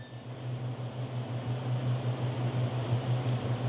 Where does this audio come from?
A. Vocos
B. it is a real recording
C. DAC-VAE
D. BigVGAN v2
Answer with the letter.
B